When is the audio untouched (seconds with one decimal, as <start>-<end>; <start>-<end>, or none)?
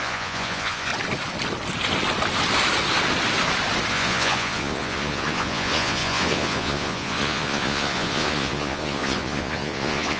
0.9-3.9